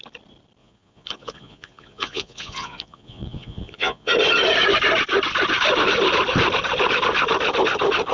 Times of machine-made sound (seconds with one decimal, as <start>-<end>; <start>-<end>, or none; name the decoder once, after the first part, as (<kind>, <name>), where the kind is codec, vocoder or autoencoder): 0.6-4.1 (vocoder, Vocos)